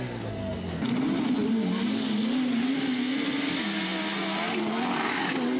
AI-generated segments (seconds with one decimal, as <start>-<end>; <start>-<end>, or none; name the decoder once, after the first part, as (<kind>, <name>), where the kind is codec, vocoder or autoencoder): none